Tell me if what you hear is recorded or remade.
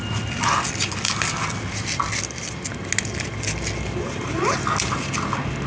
recorded